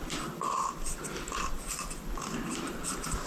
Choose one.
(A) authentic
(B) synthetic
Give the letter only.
A